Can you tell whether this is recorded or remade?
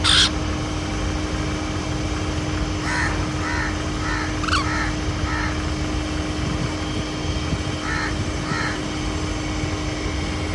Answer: recorded